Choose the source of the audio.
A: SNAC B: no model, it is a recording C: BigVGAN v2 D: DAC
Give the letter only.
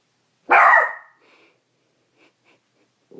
B